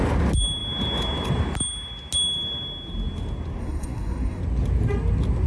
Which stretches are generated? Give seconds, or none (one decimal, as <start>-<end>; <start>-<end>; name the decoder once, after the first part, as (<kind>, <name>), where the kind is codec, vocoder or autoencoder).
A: 3.6-4.4 (codec, SNAC)